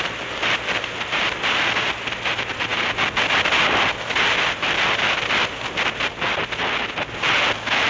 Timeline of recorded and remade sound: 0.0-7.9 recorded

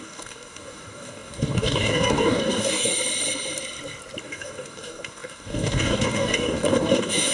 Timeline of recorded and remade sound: 0.0-2.9 remade; 2.9-4.2 recorded; 4.2-7.3 remade

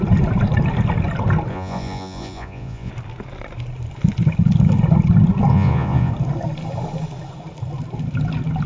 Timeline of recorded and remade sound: 0.0-1.5 recorded; 1.5-2.9 remade; 2.9-5.5 recorded; 5.5-6.1 remade; 6.1-8.7 recorded

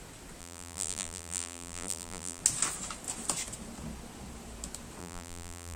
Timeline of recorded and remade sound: 0.0-0.4 recorded; 0.4-2.4 remade; 2.4-5.0 recorded; 5.0-5.8 remade

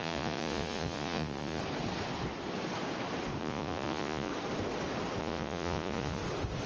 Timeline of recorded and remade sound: 0.0-1.6 remade; 1.6-3.4 recorded; 3.4-4.3 remade; 4.3-5.2 recorded; 5.2-6.2 remade; 6.2-6.7 recorded